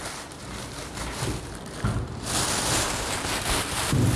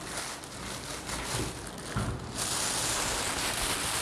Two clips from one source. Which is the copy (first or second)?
first